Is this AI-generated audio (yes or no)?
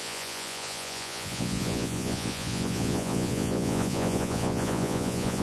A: yes